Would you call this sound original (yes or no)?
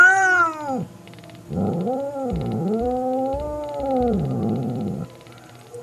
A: no